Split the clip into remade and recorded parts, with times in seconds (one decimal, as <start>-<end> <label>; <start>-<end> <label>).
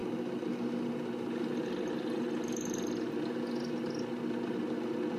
0.0-5.2 recorded